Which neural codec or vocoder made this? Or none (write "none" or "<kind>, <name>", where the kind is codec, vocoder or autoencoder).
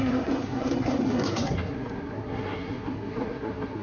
codec, SNAC